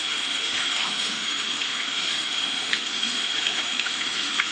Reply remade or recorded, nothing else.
remade